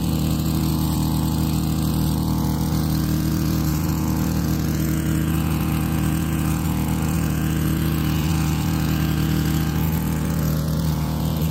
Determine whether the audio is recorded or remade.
remade